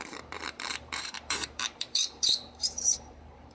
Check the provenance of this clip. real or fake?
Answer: fake